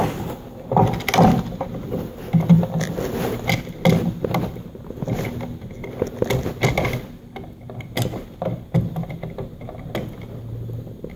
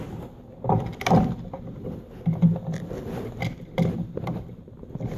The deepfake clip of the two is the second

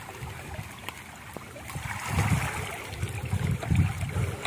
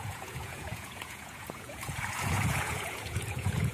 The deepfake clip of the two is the second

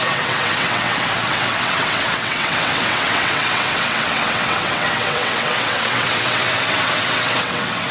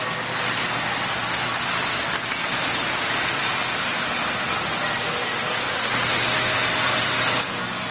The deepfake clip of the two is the first